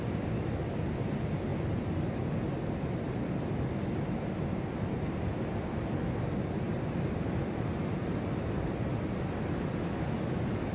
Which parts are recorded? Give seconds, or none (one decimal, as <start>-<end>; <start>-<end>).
0.0-10.7